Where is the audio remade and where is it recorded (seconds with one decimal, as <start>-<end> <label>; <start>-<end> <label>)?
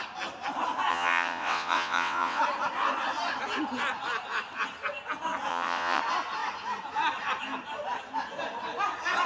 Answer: 0.0-0.9 recorded; 0.9-2.4 remade; 2.4-5.5 recorded; 5.5-6.0 remade; 6.0-9.3 recorded